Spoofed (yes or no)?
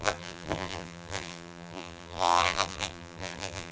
yes